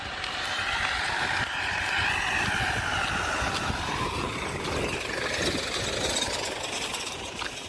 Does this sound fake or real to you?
real